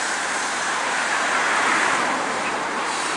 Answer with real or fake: fake